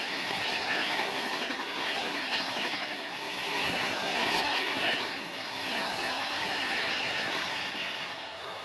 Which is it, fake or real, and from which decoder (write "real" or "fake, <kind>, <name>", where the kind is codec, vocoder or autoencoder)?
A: fake, codec, SNAC